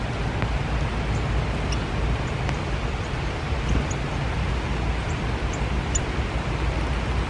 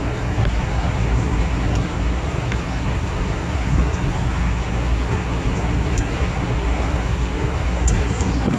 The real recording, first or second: first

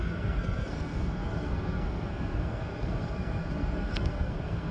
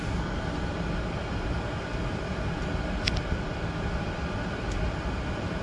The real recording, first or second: second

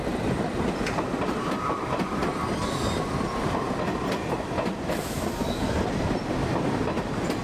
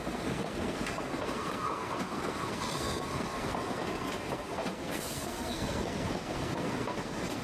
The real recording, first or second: first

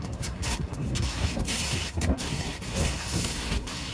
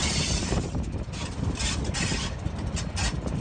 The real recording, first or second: second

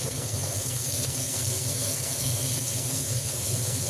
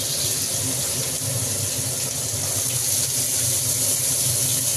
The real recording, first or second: second